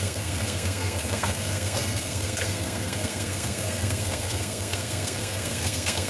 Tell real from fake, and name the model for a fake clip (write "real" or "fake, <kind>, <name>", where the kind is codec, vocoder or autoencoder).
fake, codec, SNAC